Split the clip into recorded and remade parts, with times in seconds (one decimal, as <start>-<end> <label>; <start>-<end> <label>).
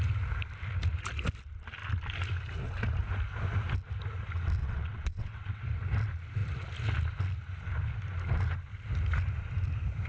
0.0-4.6 recorded; 4.6-5.6 remade; 5.6-10.1 recorded